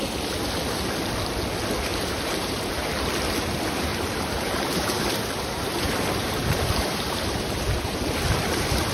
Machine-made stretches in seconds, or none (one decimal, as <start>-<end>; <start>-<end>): 1.9-2.7; 3.9-8.1